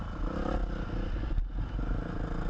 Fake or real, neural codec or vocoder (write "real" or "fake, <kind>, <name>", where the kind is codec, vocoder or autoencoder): real